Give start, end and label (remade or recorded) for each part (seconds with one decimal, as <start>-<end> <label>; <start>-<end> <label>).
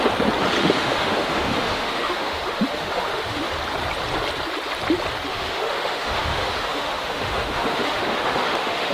0.0-0.6 recorded; 0.6-3.5 remade; 3.5-5.3 recorded; 5.3-8.9 remade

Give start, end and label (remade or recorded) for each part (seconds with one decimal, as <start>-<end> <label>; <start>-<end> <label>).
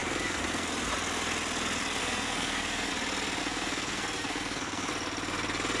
0.0-0.7 remade; 0.7-2.0 recorded; 2.0-2.9 remade; 2.9-3.4 recorded; 3.4-4.9 remade; 4.9-5.8 recorded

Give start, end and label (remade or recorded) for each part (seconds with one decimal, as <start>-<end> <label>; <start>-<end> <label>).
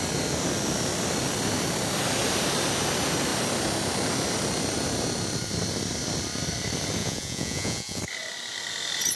0.0-7.0 recorded; 7.0-8.0 remade; 8.0-9.2 recorded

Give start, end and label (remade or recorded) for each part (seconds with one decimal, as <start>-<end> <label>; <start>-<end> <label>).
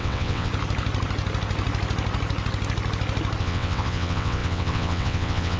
0.0-0.5 remade; 0.5-3.4 recorded; 3.4-5.6 remade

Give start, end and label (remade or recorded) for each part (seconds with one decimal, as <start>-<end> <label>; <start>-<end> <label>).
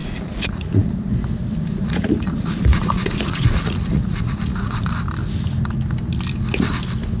0.0-0.9 remade; 0.9-1.8 recorded; 1.8-4.9 remade; 4.9-7.2 recorded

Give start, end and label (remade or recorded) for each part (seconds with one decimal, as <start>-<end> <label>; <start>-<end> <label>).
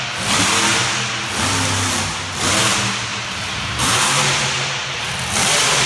0.0-3.1 recorded; 3.1-5.1 remade; 5.1-5.9 recorded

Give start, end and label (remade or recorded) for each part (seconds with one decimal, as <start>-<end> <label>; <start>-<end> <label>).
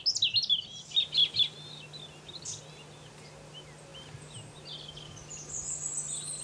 0.0-6.4 recorded